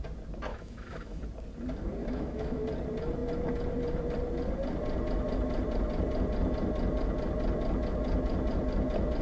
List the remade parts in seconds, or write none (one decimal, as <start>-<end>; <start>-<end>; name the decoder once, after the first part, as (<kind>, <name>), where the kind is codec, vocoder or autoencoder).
0.5-1.2 (autoencoder, DAC-VAE); 2.0-2.6